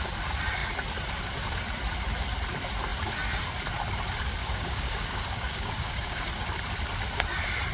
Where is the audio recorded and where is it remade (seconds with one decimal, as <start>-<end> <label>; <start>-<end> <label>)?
0.0-4.4 recorded; 4.4-6.3 remade; 6.3-7.7 recorded